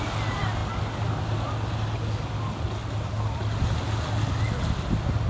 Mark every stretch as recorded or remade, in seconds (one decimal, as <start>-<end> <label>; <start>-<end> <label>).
0.0-5.3 recorded